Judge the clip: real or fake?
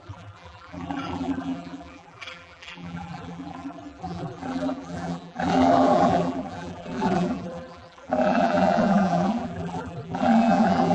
fake